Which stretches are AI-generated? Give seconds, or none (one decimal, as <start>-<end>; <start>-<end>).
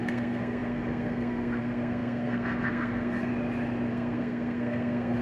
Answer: 0.0-3.3; 3.9-5.2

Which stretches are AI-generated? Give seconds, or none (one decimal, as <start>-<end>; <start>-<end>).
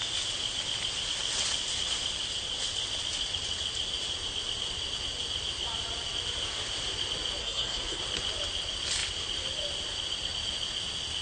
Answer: 7.4-8.0